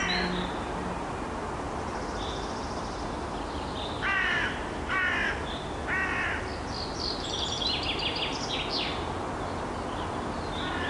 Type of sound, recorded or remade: recorded